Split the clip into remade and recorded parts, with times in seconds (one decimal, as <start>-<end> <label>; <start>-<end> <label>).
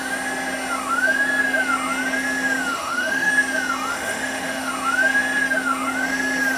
0.0-2.7 recorded; 2.7-3.3 remade; 3.3-3.9 recorded; 3.9-4.7 remade; 4.7-6.6 recorded